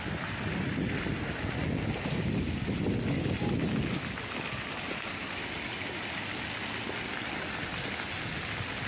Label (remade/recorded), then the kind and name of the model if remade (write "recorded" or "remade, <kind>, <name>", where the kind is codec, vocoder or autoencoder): recorded